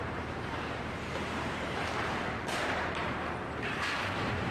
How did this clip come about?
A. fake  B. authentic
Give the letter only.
A